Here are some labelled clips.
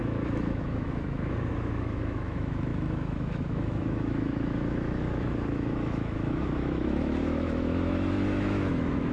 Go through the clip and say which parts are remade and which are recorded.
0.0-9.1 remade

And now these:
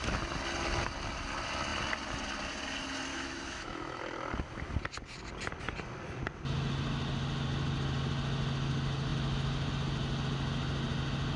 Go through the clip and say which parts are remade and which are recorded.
0.0-3.1 recorded; 3.1-4.0 remade; 4.0-11.4 recorded